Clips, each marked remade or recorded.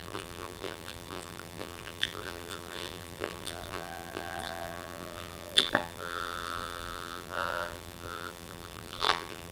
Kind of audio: remade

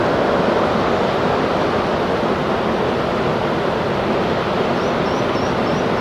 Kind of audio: recorded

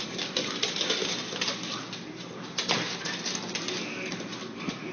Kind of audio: recorded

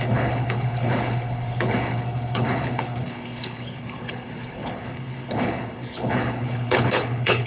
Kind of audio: remade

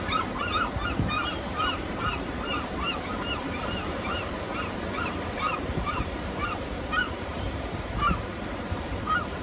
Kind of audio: remade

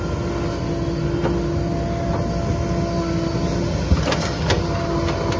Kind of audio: recorded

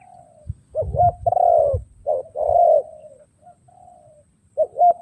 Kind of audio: recorded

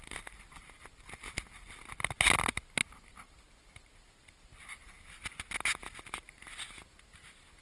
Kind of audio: recorded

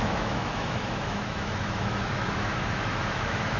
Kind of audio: remade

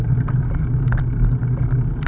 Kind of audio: recorded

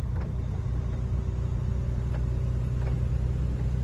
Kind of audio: recorded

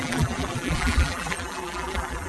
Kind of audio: remade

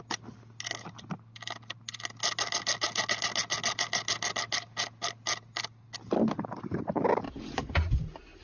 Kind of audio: recorded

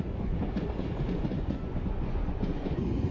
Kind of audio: remade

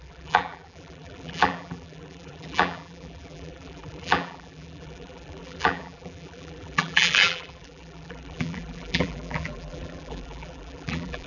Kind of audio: remade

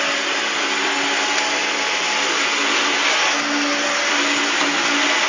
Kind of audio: recorded